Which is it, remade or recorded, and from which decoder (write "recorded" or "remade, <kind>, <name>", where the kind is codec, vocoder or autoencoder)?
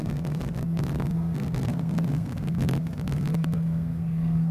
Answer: remade, codec, SNAC